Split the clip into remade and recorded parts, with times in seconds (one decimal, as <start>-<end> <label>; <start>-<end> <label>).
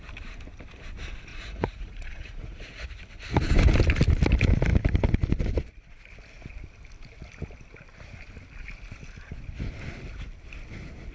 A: 0.0-1.3 recorded; 1.3-3.0 remade; 3.0-11.1 recorded